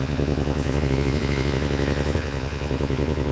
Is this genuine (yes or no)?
no